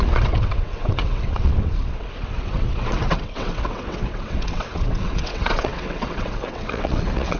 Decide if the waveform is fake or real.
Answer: fake